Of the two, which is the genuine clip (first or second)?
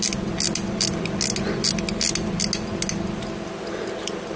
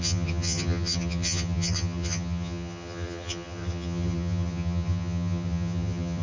first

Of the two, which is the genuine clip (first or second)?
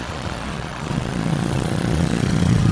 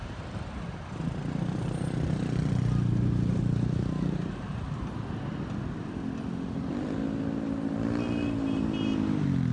second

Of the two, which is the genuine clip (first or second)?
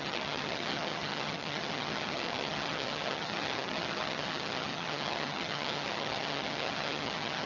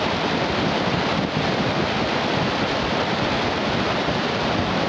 second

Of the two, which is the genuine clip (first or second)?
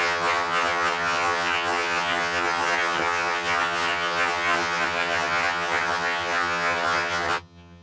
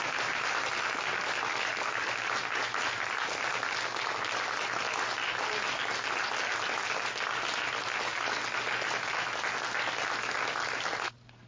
second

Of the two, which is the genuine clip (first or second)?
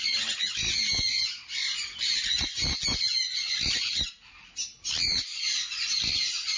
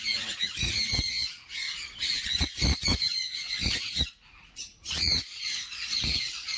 first